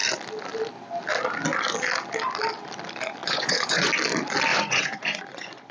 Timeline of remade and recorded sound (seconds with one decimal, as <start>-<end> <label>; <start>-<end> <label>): 0.0-3.2 recorded; 3.2-3.9 remade; 3.9-4.5 recorded; 4.5-5.7 remade